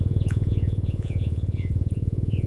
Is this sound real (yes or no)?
no